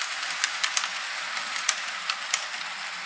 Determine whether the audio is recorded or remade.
recorded